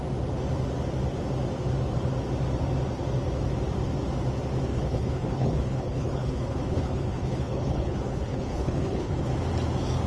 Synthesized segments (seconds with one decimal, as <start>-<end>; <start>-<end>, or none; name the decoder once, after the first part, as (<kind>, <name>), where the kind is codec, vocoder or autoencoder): 4.7-9.3 (codec, HILCodec)